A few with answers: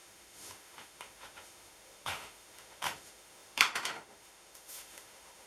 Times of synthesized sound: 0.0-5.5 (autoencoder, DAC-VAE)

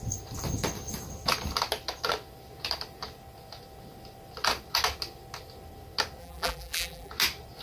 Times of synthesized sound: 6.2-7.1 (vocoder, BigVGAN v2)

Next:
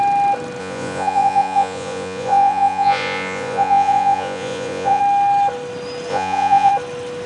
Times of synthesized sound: 0.6-5.0 (vocoder, Vocos); 6.1-6.7

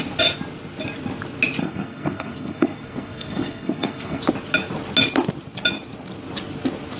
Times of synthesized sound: 1.6-4.2 (codec, SNAC)

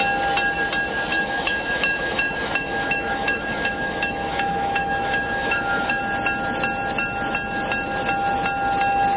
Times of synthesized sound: 1.1-6.0 (autoencoder, DAC-VAE)

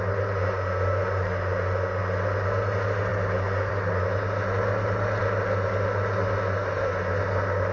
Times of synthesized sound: none

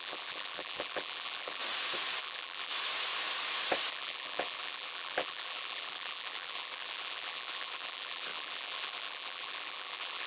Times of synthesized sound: 0.0-1.6 (vocoder, BigVGAN v2); 2.2-2.7; 3.9-10.3

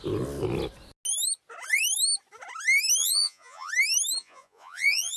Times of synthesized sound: 3.0-3.7 (vocoder, Vocos); 4.2-5.2